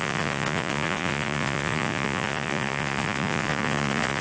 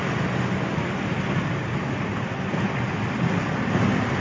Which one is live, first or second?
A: second